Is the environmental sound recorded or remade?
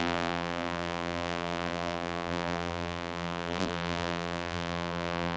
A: remade